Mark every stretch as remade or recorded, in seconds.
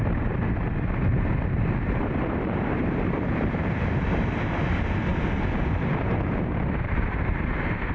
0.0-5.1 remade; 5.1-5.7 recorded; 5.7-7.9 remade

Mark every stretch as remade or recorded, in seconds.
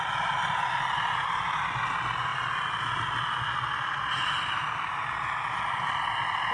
0.0-6.5 recorded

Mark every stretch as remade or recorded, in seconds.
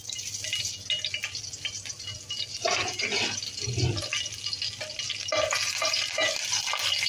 0.0-7.1 recorded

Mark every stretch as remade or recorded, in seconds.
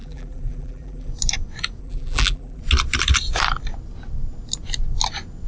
0.0-1.1 remade; 1.1-1.8 recorded; 1.8-2.6 remade; 2.6-5.5 recorded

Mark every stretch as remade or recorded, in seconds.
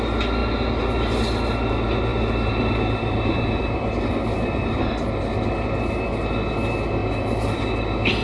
0.0-2.1 recorded; 2.1-4.8 remade; 4.8-7.0 recorded; 7.0-7.6 remade; 7.6-8.2 recorded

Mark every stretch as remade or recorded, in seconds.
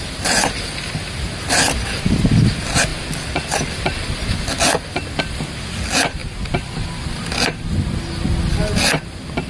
0.0-2.9 recorded; 2.9-5.2 remade; 5.2-9.5 recorded